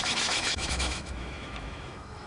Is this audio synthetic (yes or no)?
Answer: yes